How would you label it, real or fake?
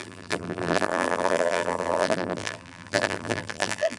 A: fake